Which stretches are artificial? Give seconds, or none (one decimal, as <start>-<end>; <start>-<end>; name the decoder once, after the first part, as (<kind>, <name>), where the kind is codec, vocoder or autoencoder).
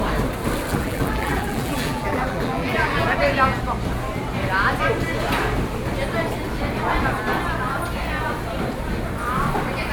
0.7-3.2 (vocoder, BigVGAN v2)